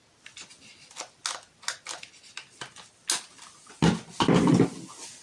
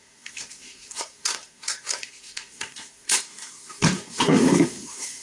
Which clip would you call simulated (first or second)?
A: second